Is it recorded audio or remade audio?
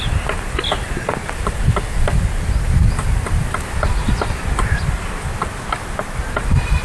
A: recorded